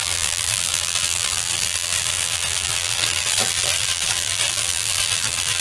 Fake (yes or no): yes